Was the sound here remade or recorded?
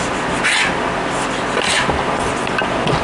recorded